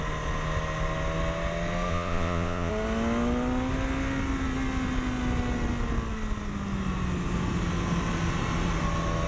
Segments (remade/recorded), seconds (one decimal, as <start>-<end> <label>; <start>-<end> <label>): 0.0-1.9 recorded; 1.9-2.7 remade; 2.7-9.3 recorded